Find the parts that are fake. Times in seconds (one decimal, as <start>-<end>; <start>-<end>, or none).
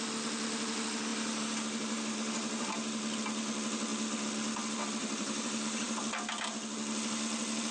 1.1-3.0; 5.0-6.0